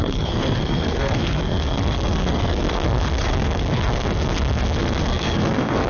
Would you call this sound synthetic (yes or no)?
yes